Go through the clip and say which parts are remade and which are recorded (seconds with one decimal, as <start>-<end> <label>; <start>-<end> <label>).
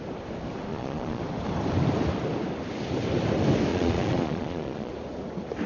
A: 0.0-0.7 recorded; 0.7-1.2 remade; 1.2-3.7 recorded; 3.7-4.9 remade; 4.9-5.7 recorded